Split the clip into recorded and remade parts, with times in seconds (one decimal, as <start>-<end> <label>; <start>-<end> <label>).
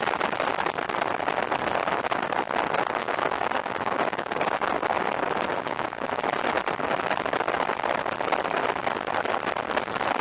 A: 0.0-3.0 recorded; 3.0-4.7 remade; 4.7-5.5 recorded; 5.5-6.1 remade; 6.1-10.2 recorded